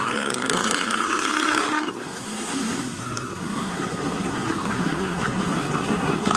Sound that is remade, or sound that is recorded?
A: remade